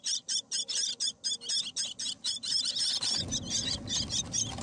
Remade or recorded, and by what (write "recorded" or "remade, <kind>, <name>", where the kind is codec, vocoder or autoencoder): recorded